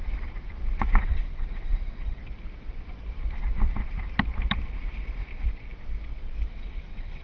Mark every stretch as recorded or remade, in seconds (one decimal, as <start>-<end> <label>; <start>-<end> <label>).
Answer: 0.0-1.0 recorded; 1.0-2.2 remade; 2.2-6.5 recorded; 6.5-7.2 remade